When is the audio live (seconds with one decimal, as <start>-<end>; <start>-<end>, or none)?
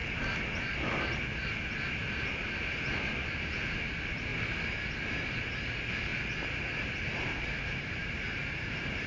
0.0-1.9; 4.3-5.6; 6.1-7.2